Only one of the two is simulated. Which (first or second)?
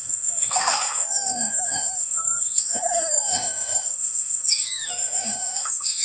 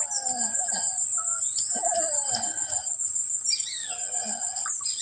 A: first